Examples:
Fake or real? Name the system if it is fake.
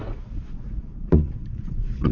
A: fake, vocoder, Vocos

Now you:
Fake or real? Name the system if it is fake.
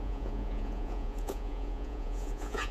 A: fake, vocoder, Vocos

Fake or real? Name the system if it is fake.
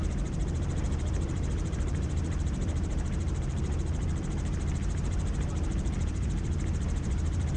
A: fake, vocoder, BigVGAN v2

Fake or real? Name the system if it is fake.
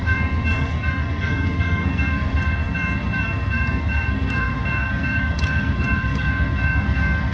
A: fake, codec, SNAC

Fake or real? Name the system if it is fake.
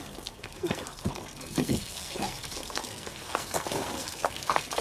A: fake, codec, SNAC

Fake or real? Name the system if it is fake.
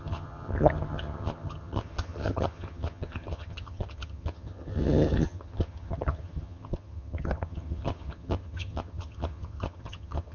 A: fake, vocoder, HiFi-GAN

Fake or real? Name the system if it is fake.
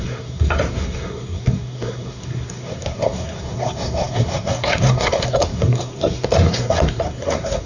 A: fake, codec, SNAC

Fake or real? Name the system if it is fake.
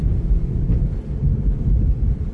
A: real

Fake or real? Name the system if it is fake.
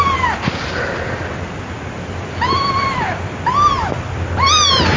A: real